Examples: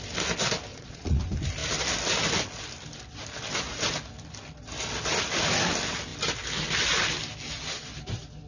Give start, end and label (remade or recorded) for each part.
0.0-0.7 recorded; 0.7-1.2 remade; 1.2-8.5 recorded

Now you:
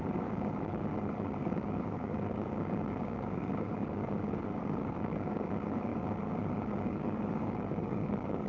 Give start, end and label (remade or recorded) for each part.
0.0-0.9 remade; 0.9-1.4 recorded; 1.4-8.5 remade

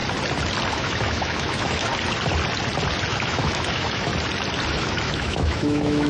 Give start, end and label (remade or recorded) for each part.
0.0-0.7 recorded; 0.7-1.9 remade; 1.9-3.1 recorded; 3.1-4.1 remade; 4.1-4.7 recorded; 4.7-6.1 remade

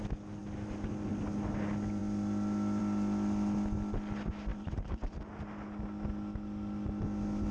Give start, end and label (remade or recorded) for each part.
0.0-4.5 recorded; 4.5-5.3 remade; 5.3-7.5 recorded

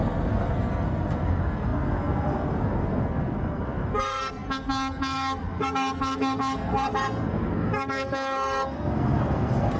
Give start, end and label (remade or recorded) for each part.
0.0-9.8 remade

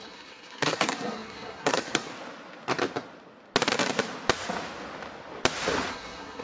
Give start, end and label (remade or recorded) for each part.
0.0-2.1 remade; 2.1-5.9 recorded; 5.9-6.4 remade

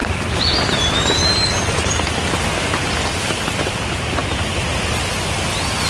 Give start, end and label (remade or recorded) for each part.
0.0-5.9 recorded

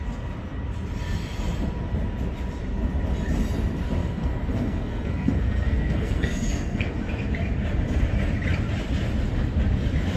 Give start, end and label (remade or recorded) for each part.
0.0-4.0 recorded; 4.0-6.9 remade; 6.9-10.2 recorded